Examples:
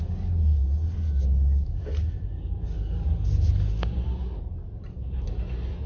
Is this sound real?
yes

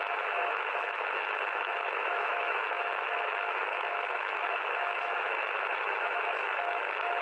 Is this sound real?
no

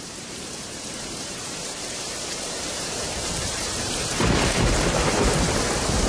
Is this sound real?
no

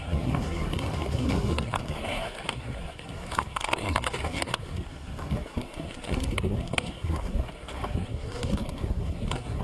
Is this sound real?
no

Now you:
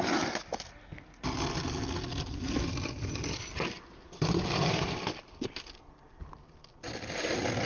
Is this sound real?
yes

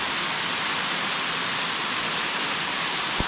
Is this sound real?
yes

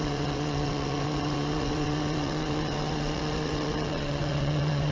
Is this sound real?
no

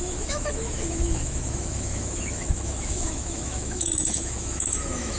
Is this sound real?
no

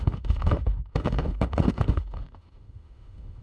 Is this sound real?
no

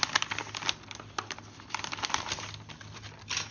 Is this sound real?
yes